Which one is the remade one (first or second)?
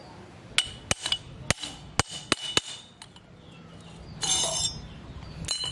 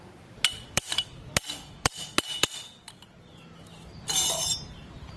second